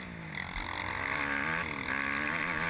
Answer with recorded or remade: recorded